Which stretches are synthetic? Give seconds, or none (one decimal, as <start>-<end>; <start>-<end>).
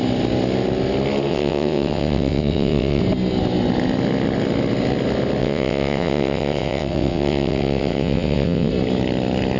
1.3-3.0; 5.4-8.7